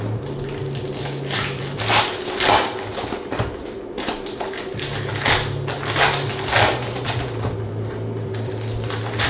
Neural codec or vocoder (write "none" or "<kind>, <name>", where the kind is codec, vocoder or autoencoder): none